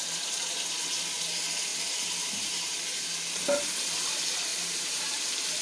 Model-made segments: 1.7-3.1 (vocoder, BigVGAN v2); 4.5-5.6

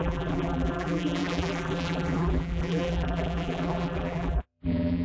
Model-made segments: 0.0-5.0 (vocoder, BigVGAN v2)

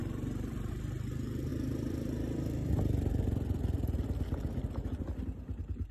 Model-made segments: 0.0-0.7 (vocoder, BigVGAN v2); 1.5-5.0

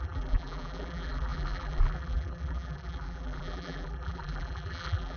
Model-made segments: 0.0-5.2 (vocoder, BigVGAN v2)

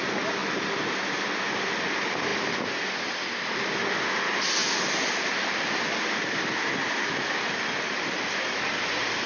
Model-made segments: 0.4-1.7 (vocoder, BigVGAN v2); 2.3-3.6